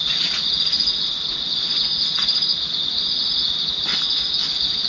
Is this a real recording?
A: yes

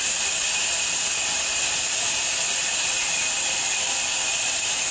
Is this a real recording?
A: yes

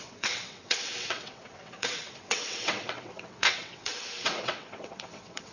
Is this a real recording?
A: no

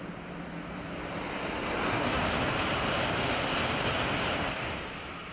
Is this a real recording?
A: yes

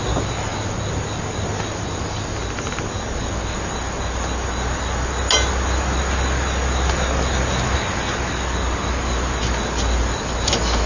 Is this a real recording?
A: yes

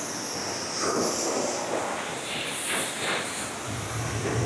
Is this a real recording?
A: yes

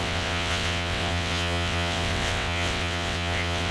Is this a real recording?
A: no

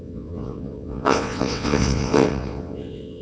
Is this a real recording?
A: no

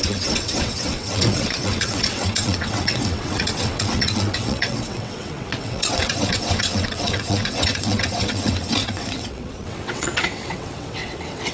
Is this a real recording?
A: no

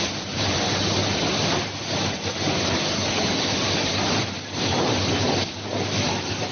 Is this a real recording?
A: yes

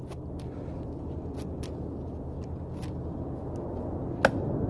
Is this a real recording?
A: yes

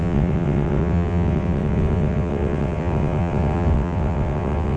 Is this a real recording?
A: no